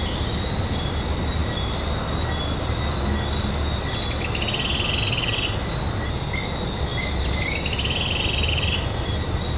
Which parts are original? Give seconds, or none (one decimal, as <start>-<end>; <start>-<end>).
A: 0.0-9.6